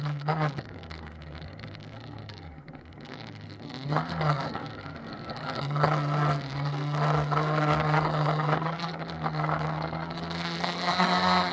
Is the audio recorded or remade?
remade